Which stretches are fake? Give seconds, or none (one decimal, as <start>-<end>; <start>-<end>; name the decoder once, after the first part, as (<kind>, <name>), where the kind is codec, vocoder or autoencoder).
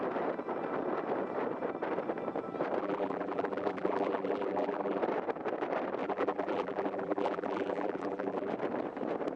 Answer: 2.8-5.0 (vocoder, BigVGAN v2); 6.0-8.5